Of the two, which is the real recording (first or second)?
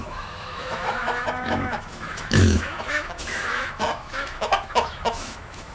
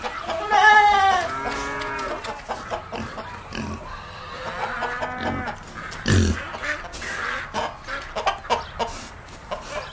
second